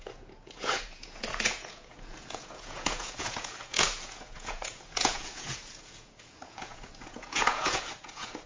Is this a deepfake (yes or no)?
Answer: yes